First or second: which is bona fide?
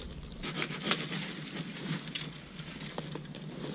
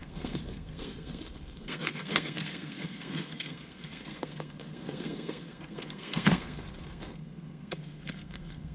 first